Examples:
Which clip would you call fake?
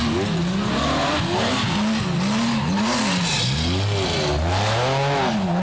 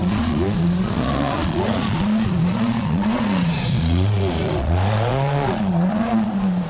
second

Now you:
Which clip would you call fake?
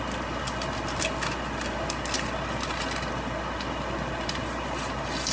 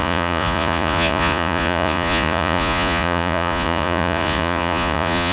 second